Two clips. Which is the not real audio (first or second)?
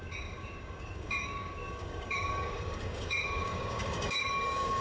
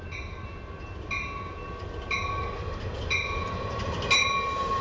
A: first